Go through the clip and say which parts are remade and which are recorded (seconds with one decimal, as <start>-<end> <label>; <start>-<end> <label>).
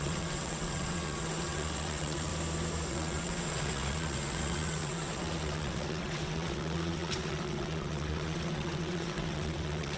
0.0-2.3 remade; 2.3-2.9 recorded; 2.9-10.0 remade